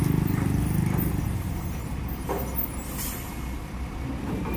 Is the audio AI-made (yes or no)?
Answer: no